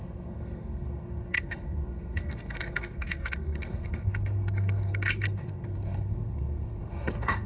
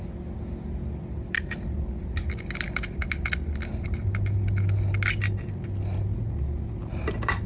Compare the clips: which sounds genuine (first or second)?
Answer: second